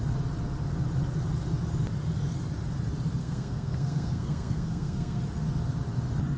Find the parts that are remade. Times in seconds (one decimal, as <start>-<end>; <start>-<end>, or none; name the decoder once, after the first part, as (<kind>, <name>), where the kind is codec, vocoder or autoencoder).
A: 3.2-5.2 (codec, SNAC)